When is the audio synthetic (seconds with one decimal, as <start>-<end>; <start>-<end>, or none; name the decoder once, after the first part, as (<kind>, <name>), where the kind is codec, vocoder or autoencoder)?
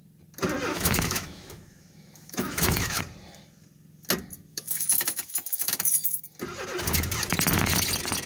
0.7-3.0 (autoencoder, DAC-VAE); 4.5-6.2